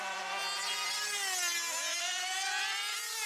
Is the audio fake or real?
real